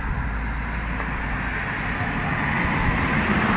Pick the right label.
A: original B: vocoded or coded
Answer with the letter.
A